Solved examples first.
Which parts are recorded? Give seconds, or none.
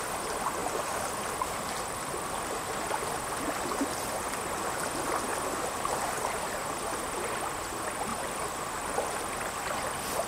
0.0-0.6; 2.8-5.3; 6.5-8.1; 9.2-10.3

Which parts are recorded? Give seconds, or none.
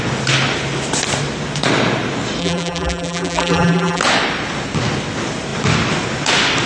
0.0-2.4; 4.0-6.7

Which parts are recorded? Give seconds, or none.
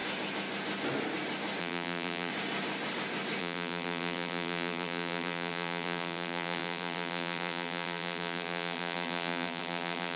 0.0-1.6; 2.3-3.4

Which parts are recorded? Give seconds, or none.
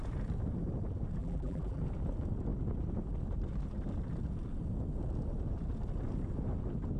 0.0-1.2; 1.8-7.0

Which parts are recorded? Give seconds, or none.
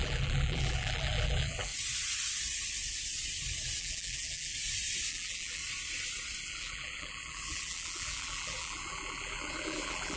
1.7-3.8; 4.5-5.1; 5.6-6.4